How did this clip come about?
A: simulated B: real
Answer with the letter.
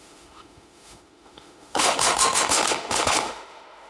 A